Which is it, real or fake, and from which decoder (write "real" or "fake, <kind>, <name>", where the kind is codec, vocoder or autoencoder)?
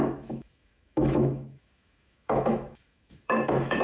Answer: fake, autoencoder, DAC-VAE